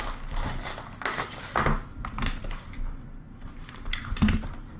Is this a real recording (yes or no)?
yes